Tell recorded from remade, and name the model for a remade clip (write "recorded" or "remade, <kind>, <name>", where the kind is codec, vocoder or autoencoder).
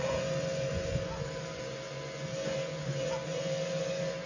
remade, vocoder, Vocos